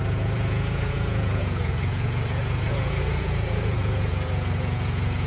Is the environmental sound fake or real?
fake